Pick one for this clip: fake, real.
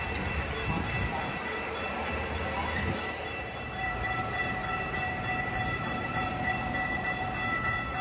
fake